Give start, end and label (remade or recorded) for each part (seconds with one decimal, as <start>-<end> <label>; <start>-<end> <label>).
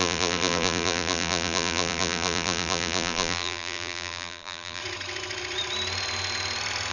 0.0-4.8 remade; 4.8-6.9 recorded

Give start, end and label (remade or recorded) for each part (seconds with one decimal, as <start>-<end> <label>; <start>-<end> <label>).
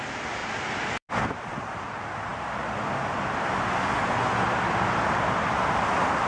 0.0-0.4 recorded; 0.4-1.8 remade; 1.8-6.3 recorded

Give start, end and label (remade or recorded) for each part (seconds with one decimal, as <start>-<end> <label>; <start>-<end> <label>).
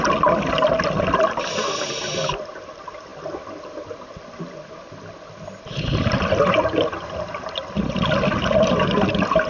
0.0-9.5 recorded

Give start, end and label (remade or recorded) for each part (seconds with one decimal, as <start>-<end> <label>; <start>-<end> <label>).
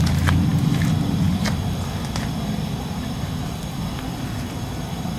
0.0-5.2 recorded